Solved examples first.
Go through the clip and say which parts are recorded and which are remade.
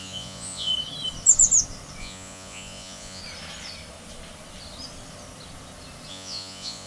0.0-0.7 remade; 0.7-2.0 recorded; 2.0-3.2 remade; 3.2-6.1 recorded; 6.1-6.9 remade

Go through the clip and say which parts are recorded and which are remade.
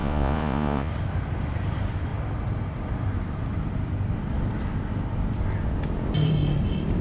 0.0-0.9 remade; 0.9-7.0 recorded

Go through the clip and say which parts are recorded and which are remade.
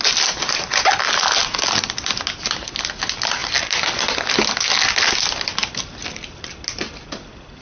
0.0-7.6 recorded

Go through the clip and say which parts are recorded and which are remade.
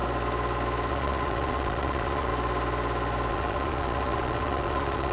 0.0-0.9 recorded; 0.9-2.3 remade; 2.3-3.3 recorded; 3.3-5.1 remade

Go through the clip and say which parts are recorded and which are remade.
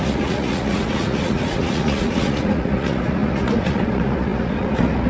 0.0-5.1 remade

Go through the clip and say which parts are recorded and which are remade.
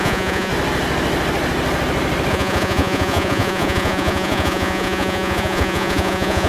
0.0-0.5 remade; 0.5-2.3 recorded; 2.3-6.5 remade